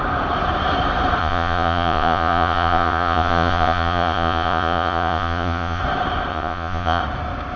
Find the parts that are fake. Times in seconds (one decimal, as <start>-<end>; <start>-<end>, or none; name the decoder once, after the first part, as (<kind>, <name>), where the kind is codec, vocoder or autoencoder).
1.2-5.8 (vocoder, Vocos); 6.3-7.0